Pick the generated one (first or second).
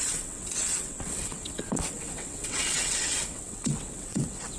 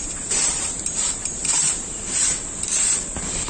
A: first